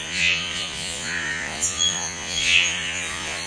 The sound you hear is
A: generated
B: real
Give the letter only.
A